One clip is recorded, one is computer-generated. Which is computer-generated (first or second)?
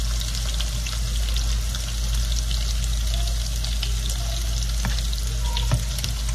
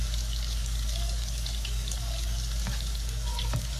second